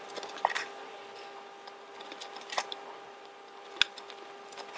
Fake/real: real